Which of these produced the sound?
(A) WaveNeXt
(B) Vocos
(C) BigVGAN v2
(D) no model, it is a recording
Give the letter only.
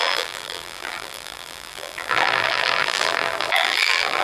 C